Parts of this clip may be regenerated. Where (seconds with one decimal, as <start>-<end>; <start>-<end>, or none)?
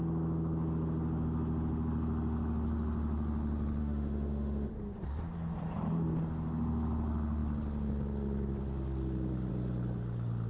3.8-4.7